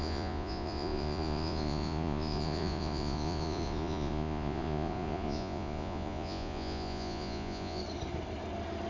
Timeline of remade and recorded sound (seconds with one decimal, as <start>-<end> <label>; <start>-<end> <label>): 0.0-7.8 remade; 7.8-8.9 recorded